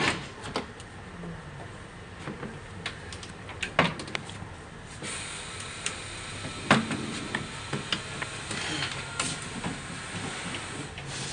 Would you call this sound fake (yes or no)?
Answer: no